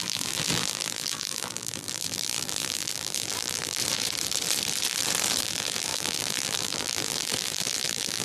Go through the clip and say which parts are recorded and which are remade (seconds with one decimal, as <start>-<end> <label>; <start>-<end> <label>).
0.0-3.8 remade; 3.8-5.4 recorded; 5.4-8.2 remade